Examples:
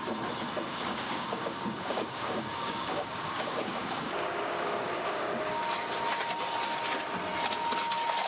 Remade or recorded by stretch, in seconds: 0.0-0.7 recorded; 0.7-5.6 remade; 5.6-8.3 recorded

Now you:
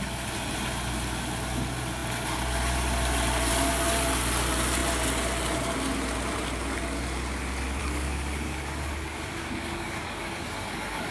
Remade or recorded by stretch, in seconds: 0.0-7.8 recorded; 7.8-11.1 remade